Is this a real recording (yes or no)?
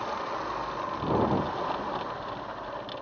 yes